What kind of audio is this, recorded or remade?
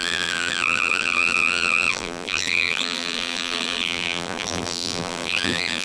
remade